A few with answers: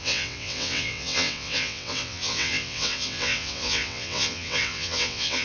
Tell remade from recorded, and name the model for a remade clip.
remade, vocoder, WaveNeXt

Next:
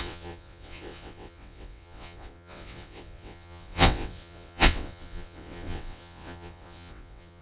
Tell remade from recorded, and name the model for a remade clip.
remade, vocoder, WaveNeXt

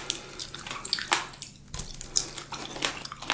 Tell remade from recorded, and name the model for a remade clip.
recorded